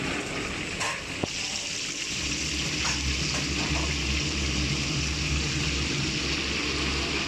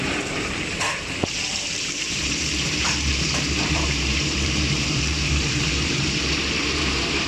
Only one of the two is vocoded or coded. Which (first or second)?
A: second